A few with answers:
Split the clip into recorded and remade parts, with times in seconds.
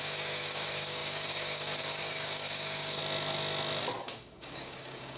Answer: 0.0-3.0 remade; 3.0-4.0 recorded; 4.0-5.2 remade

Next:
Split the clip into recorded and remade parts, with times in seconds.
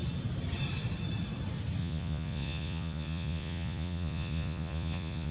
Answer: 0.0-1.8 recorded; 1.8-5.3 remade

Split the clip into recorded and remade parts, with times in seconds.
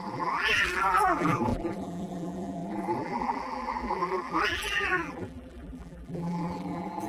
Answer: 0.0-7.1 remade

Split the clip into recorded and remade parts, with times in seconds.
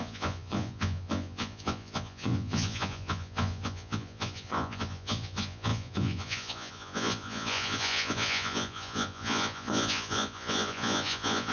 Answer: 0.0-11.5 remade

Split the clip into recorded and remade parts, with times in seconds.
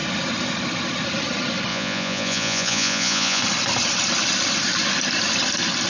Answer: 0.0-1.7 recorded; 1.7-3.4 remade; 3.4-5.9 recorded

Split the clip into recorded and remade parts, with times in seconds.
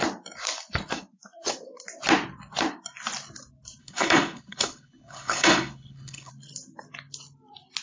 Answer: 0.0-3.8 recorded; 3.8-6.3 remade; 6.3-7.8 recorded